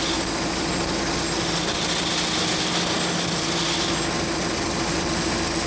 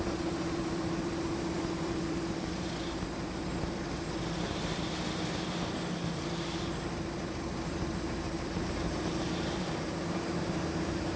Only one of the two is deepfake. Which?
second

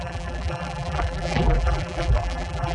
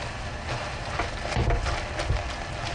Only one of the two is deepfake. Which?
first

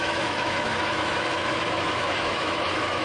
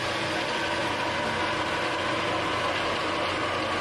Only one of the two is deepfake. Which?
first